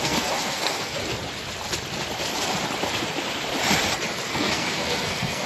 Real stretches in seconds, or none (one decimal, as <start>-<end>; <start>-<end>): 1.0-4.3